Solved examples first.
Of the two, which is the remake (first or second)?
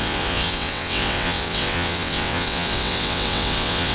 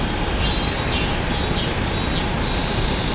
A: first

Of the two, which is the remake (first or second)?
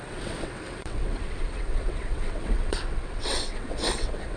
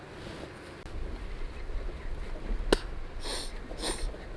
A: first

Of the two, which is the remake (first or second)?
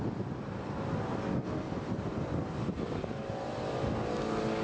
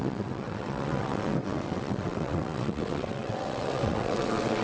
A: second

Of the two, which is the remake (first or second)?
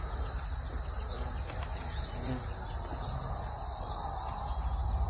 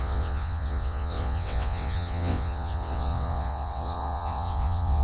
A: second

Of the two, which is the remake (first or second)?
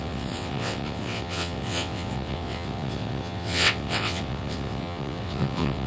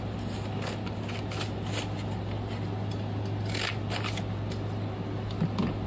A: first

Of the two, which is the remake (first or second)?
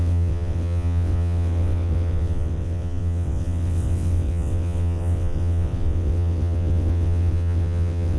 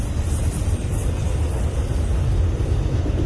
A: first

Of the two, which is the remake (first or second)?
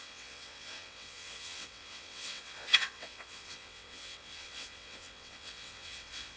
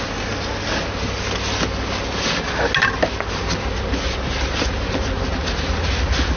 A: first